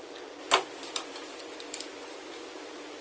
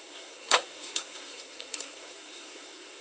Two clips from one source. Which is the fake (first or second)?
second